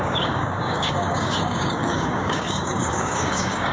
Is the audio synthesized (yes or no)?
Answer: yes